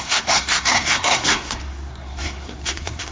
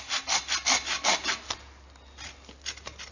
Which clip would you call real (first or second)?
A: second